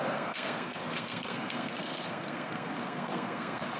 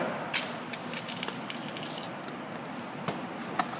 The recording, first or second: second